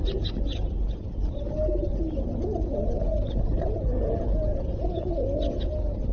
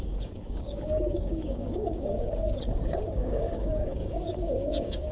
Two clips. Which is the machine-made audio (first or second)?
second